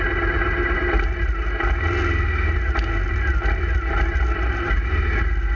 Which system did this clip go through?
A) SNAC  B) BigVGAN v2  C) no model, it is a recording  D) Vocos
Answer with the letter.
C